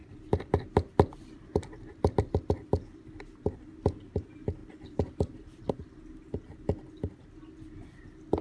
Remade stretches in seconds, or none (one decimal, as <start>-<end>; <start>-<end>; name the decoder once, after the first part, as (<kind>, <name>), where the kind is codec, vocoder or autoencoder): 0.0-3.0 (vocoder, BigVGAN v2); 4.6-5.7